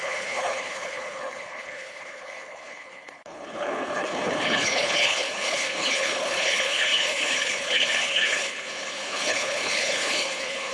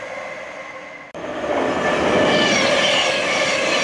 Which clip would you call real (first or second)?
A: second